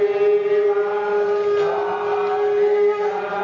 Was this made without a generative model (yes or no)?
yes